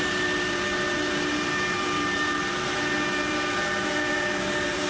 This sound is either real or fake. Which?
fake